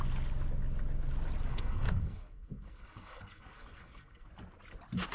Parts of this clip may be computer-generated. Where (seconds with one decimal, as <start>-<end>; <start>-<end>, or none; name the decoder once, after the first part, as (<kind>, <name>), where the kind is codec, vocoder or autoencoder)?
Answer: 1.5-4.3 (codec, SNAC)